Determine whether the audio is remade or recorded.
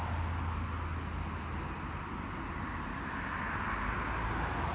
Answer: recorded